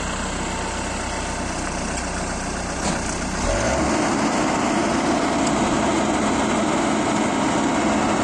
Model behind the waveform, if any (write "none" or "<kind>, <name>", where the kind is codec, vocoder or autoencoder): none